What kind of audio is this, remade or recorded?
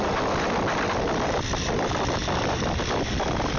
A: recorded